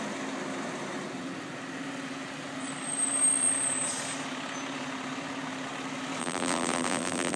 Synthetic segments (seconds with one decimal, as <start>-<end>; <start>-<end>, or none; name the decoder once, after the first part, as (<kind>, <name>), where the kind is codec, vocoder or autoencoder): 6.2-7.4 (vocoder, BigVGAN v2)